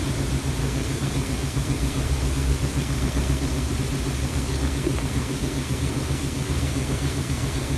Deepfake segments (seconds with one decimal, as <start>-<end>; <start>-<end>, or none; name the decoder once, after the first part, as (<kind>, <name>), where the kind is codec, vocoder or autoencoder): 0.6-3.7 (codec, SNAC); 4.2-7.8